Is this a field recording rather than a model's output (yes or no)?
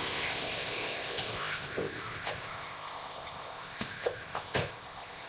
no